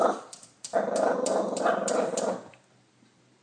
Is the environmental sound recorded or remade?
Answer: recorded